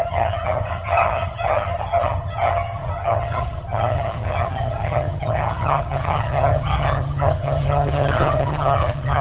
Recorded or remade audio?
remade